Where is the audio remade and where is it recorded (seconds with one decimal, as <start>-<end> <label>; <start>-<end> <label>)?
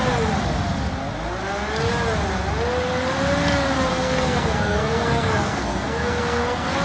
0.0-3.9 recorded; 3.9-6.8 remade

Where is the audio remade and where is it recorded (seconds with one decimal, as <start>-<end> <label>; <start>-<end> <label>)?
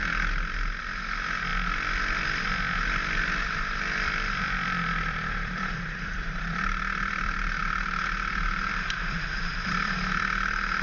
0.0-0.8 recorded; 0.8-10.8 remade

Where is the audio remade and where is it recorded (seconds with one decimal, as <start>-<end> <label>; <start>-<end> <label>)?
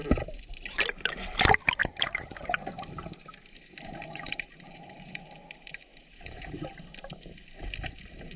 0.0-1.8 recorded; 1.8-5.2 remade; 5.2-6.0 recorded; 6.0-6.7 remade; 6.7-8.4 recorded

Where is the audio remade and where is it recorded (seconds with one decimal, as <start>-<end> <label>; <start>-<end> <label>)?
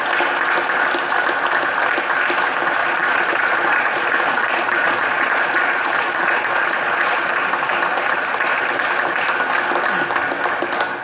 0.0-2.8 recorded; 2.8-7.5 remade; 7.5-11.0 recorded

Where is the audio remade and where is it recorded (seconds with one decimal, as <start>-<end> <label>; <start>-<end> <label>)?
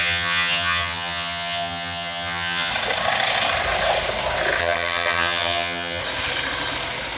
0.0-2.7 remade; 2.7-4.6 recorded; 4.6-6.0 remade; 6.0-7.2 recorded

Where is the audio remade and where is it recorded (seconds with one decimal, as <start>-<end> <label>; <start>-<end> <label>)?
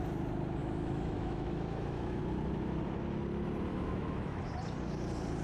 0.0-0.6 recorded; 0.6-2.2 remade; 2.2-3.7 recorded; 3.7-4.5 remade; 4.5-5.4 recorded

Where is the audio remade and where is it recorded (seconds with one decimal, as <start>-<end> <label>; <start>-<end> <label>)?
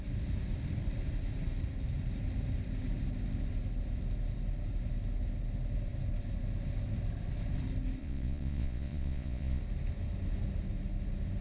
0.0-8.0 recorded; 8.0-9.6 remade; 9.6-11.4 recorded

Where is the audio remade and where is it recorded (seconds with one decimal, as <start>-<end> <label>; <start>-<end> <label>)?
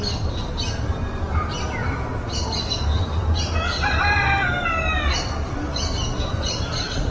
0.0-5.7 recorded; 5.7-7.1 remade